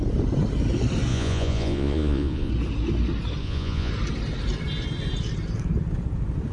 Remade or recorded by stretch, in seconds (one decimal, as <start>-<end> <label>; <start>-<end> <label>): 0.0-1.1 recorded; 1.1-2.5 remade; 2.5-3.4 recorded; 3.4-3.9 remade; 3.9-6.5 recorded